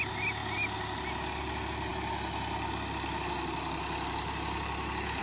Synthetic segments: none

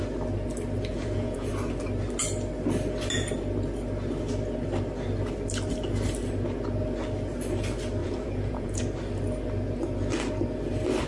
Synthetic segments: 0.9-1.5 (vocoder, Vocos); 8.0-8.8

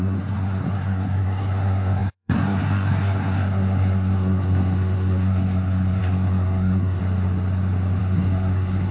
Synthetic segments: 0.0-7.0 (codec, SNAC); 8.0-8.9

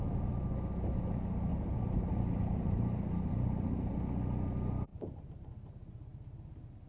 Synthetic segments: 1.5-3.9 (vocoder, BigVGAN v2); 4.9-5.5

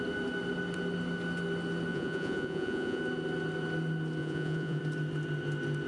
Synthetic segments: 1.9-3.0 (vocoder, Vocos); 4.2-4.8

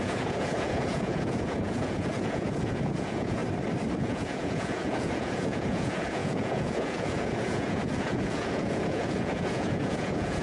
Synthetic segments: 0.0-3.4 (vocoder, Vocos); 4.0-10.4